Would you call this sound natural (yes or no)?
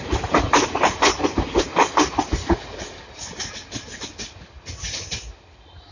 yes